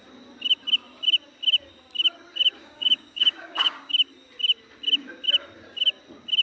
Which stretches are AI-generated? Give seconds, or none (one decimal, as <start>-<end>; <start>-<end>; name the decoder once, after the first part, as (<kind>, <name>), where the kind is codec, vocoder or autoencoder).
2.6-3.9 (codec, DAC)